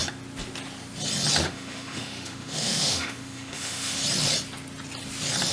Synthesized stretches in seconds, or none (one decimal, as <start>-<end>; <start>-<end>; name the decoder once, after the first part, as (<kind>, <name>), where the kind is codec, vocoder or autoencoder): 1.4-4.0 (autoencoder, DAC-VAE)